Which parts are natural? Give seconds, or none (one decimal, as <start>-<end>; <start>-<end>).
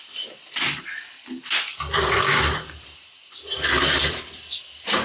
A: 2.3-5.0